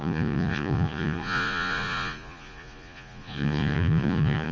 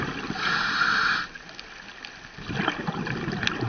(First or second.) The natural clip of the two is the second